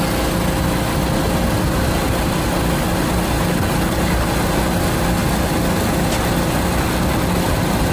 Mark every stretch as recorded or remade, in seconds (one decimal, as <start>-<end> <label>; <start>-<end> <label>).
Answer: 0.0-7.9 recorded